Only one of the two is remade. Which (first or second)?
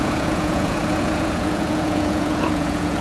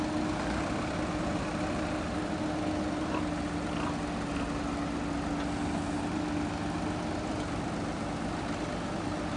first